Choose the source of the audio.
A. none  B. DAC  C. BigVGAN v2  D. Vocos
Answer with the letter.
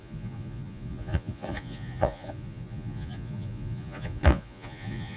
D